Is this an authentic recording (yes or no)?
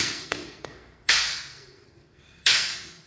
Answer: no